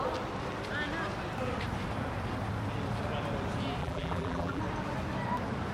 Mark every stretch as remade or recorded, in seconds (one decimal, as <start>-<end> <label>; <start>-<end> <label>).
0.0-3.8 recorded; 3.8-4.6 remade; 4.6-5.7 recorded